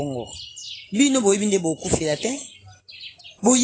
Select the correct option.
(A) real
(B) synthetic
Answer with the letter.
A